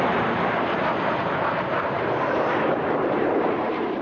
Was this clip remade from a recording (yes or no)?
yes